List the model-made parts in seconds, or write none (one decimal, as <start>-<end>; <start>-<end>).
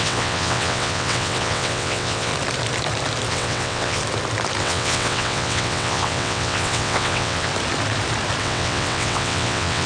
0.0-2.3; 3.3-4.0; 4.6-7.5; 8.4-9.9